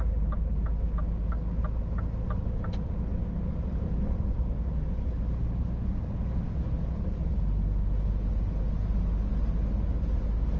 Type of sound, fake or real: real